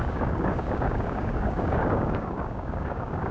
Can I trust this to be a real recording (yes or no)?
no